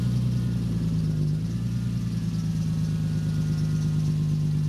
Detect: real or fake real